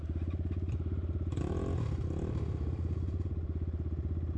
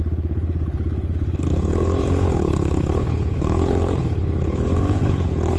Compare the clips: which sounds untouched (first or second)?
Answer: first